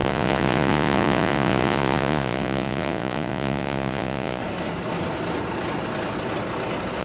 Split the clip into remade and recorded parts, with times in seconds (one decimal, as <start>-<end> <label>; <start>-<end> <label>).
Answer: 0.0-4.4 remade; 4.4-7.0 recorded

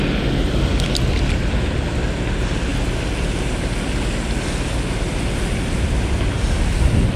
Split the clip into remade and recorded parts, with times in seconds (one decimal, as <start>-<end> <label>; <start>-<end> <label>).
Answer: 0.0-7.2 recorded

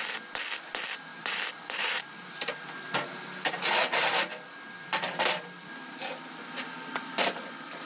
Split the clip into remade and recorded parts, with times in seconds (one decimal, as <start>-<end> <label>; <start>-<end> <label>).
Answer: 0.0-1.1 recorded; 1.1-3.7 remade; 3.7-7.9 recorded

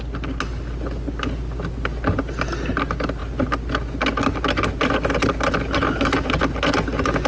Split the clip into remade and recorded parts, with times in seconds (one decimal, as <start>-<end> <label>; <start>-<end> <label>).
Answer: 0.0-7.3 recorded